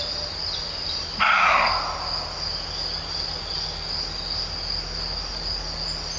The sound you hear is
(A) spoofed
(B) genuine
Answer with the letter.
B